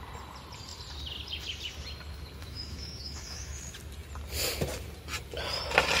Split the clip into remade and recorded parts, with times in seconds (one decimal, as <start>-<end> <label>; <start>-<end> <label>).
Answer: 0.0-2.4 recorded; 2.4-3.6 remade; 3.6-6.0 recorded